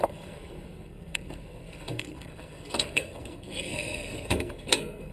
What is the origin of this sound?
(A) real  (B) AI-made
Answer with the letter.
B